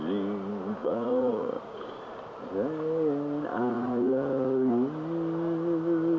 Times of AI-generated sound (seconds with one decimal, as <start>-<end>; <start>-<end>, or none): 0.8-1.8; 3.5-4.7